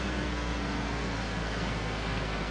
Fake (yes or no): yes